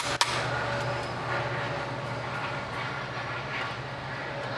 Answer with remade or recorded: recorded